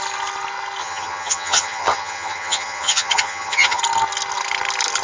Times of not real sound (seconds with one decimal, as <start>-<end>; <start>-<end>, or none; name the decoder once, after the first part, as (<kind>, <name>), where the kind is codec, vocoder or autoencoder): 0.8-3.8 (vocoder, HiFi-GAN)